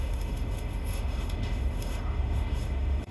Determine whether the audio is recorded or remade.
remade